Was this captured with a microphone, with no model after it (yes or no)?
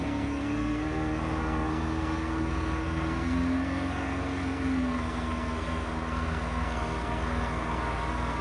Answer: no